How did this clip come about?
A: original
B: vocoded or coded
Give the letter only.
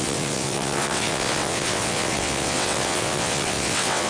B